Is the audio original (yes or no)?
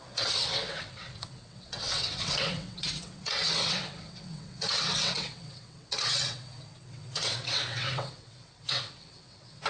no